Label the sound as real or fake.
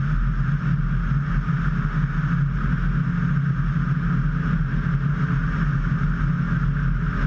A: real